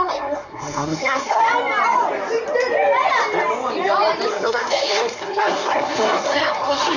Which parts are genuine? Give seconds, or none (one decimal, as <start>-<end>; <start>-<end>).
1.4-4.3